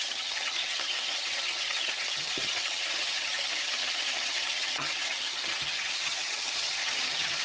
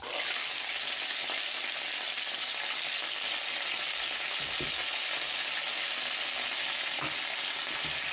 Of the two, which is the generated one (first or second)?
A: first